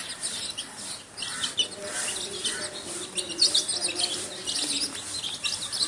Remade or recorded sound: recorded